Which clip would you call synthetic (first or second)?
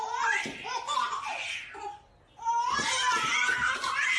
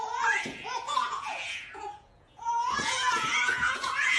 second